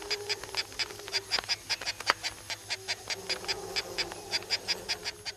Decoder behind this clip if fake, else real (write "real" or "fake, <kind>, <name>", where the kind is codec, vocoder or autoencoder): real